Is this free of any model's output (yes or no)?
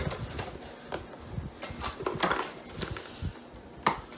yes